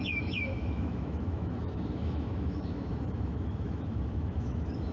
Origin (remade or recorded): remade